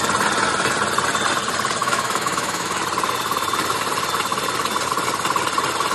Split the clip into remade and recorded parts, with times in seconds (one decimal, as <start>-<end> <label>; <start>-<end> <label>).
0.0-1.8 recorded; 1.8-2.8 remade; 2.8-5.9 recorded

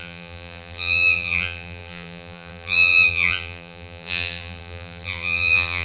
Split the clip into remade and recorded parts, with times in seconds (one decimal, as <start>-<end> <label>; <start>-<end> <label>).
0.0-5.8 remade

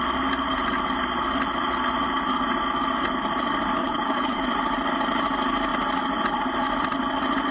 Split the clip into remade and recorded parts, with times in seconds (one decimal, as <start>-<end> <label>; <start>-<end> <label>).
0.0-3.8 recorded; 3.8-4.4 remade; 4.4-7.5 recorded